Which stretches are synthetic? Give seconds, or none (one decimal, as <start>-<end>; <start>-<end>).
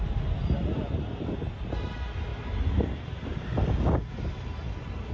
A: none